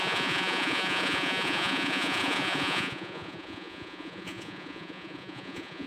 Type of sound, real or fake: fake